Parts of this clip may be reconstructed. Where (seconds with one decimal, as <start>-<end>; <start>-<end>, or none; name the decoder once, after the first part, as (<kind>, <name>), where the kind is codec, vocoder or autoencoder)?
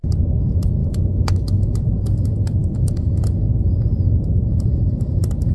0.8-1.6 (autoencoder, DAC-VAE); 2.6-3.2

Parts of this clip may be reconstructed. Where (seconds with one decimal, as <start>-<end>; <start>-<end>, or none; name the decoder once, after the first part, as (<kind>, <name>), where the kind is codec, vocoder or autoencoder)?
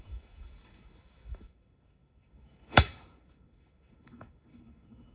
0.0-5.1 (autoencoder, DAC-VAE)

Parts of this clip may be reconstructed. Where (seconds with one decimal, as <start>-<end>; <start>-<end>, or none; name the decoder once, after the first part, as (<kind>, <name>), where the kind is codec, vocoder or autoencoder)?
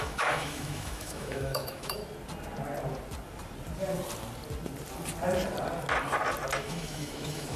0.0-2.0 (autoencoder, DAC-VAE); 6.6-7.6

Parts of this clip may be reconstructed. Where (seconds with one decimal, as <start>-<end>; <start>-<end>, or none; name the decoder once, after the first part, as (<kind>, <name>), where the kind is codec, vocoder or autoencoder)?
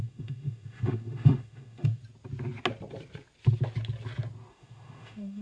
0.0-2.0 (autoencoder, DAC-VAE); 4.5-5.4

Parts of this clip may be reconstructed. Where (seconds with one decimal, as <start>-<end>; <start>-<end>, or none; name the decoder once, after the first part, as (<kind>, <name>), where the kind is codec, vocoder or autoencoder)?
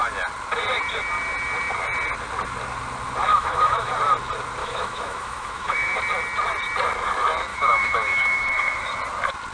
3.3-3.9 (autoencoder, DAC-VAE); 4.6-6.0; 7.5-8.9